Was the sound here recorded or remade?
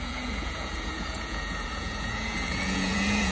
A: remade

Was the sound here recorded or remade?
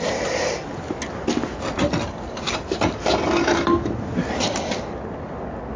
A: recorded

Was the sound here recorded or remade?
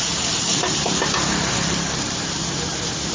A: recorded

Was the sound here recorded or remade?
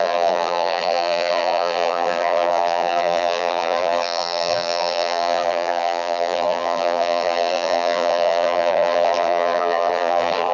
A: remade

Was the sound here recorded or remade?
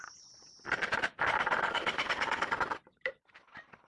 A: recorded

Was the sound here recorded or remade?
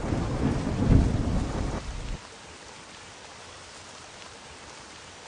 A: remade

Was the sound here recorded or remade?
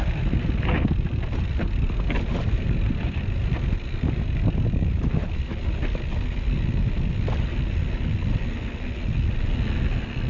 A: recorded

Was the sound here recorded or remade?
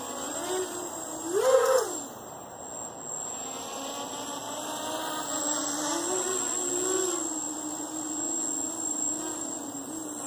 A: recorded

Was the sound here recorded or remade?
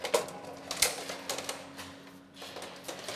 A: recorded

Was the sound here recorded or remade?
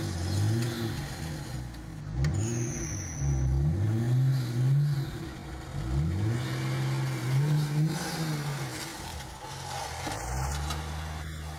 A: recorded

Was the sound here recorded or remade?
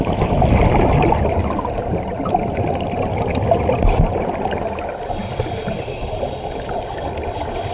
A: recorded